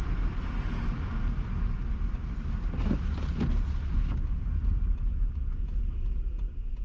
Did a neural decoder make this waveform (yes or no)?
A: no